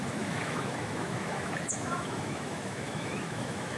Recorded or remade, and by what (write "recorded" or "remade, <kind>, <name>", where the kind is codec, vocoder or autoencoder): remade, autoencoder, DAC-VAE